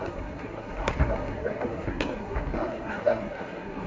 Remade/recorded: remade